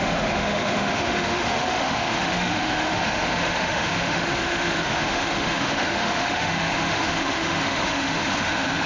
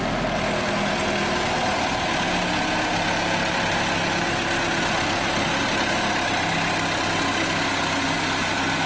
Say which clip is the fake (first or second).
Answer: first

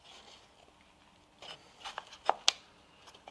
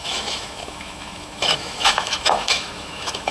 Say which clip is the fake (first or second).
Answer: second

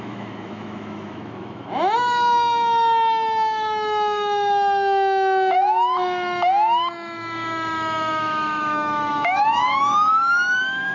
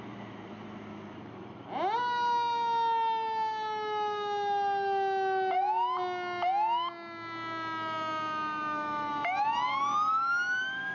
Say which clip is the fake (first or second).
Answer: first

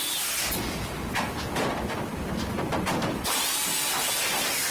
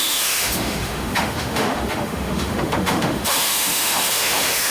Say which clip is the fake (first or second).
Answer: second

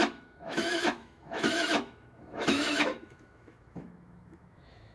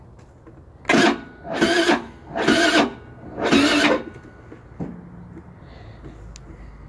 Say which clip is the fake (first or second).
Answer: first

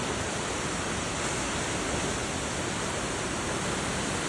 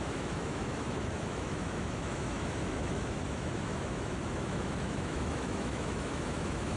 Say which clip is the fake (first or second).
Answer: second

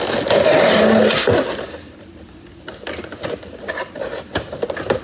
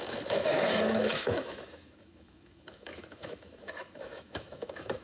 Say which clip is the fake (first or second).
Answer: second